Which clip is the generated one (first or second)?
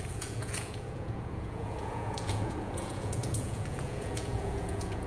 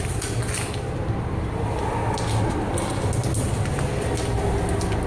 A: first